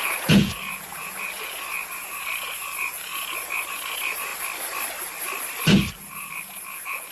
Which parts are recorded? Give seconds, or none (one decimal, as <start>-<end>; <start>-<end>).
4.3-6.1